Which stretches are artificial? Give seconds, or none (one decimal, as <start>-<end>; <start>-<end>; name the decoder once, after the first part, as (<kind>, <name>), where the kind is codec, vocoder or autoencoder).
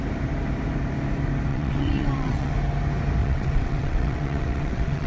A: 1.5-2.5 (vocoder, WaveNeXt); 3.2-5.1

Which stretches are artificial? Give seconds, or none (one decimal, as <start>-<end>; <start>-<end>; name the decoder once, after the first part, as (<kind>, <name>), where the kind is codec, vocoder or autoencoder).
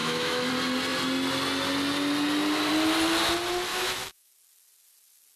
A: 0.0-0.5 (autoencoder, DAC-VAE); 3.7-4.3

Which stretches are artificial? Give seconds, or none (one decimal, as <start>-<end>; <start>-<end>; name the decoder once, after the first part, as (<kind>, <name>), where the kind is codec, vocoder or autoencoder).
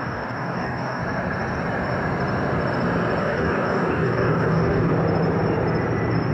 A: 0.0-1.0 (codec, DAC); 3.2-4.9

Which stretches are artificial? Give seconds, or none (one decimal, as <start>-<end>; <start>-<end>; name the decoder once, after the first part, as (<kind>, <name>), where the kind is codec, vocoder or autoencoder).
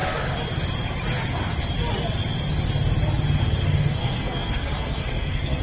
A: 3.4-5.6 (codec, SNAC)